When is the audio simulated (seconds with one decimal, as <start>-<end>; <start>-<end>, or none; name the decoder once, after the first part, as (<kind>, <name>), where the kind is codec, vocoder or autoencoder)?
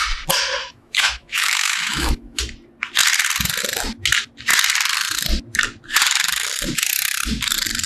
0.6-2.4 (autoencoder, DAC-VAE)